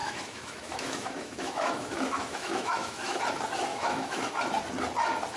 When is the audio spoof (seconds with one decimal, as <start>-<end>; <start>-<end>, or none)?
0.0-3.2; 3.7-4.3